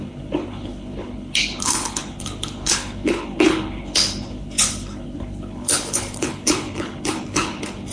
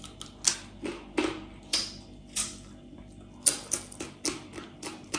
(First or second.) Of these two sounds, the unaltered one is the second